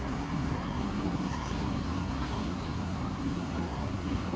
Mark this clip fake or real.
fake